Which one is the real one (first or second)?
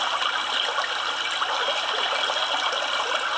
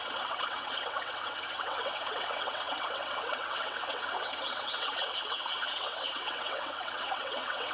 first